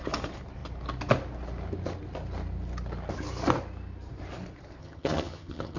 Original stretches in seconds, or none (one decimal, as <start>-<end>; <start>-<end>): 0.0-4.8